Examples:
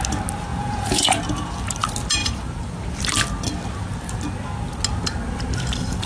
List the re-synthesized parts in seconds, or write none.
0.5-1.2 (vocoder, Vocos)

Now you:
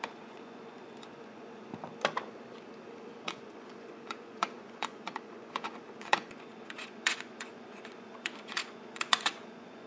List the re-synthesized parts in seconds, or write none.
0.0-1.7 (vocoder, Vocos); 3.2-9.9

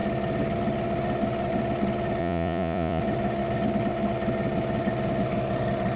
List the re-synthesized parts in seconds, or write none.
2.2-3.0 (vocoder, Vocos)

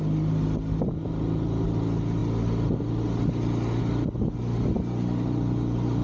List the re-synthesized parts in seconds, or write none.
none

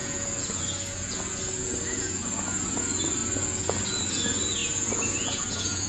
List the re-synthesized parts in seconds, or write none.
0.0-5.9 (vocoder, Vocos)